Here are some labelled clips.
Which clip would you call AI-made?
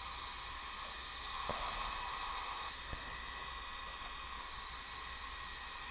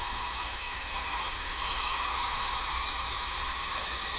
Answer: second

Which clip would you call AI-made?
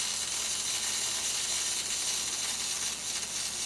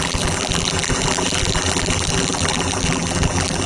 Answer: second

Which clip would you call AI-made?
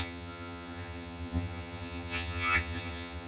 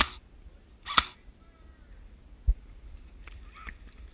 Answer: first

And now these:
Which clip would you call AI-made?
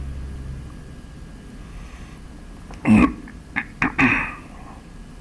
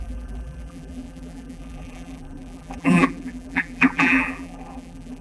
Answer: second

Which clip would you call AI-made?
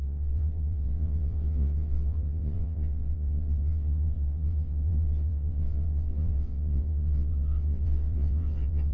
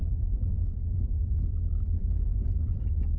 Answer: first